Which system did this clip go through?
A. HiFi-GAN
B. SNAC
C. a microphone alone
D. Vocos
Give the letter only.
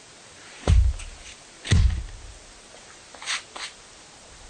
C